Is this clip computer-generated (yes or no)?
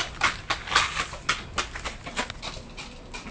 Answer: no